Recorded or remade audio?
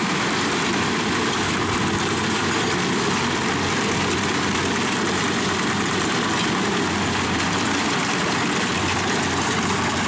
remade